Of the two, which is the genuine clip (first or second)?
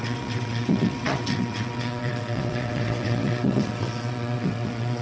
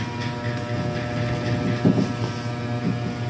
second